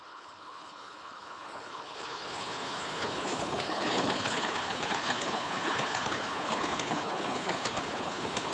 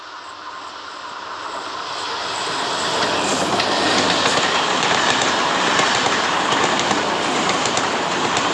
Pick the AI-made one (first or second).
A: first